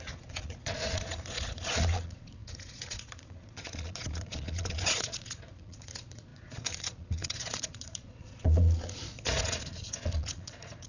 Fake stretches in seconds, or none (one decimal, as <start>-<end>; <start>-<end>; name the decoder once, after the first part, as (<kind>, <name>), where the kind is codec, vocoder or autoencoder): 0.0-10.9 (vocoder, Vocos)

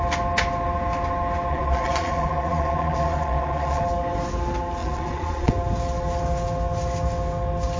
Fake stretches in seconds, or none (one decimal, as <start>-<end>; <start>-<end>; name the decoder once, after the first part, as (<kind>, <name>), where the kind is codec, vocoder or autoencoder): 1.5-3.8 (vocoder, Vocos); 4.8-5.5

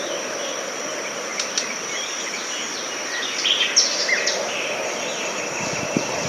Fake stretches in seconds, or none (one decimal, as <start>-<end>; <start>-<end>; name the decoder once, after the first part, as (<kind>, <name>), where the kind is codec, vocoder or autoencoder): 1.3-3.0 (vocoder, BigVGAN v2)

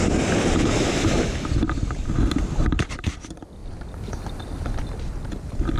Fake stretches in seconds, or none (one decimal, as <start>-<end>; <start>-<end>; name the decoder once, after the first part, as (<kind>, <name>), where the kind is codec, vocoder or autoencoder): none